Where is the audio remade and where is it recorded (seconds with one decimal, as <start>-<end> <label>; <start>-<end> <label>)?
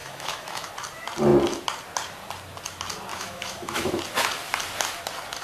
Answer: 0.0-0.7 remade; 0.7-3.1 recorded; 3.1-4.0 remade; 4.0-5.4 recorded